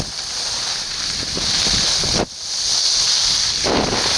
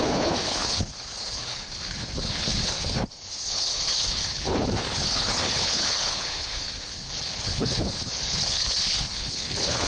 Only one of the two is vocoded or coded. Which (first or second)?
second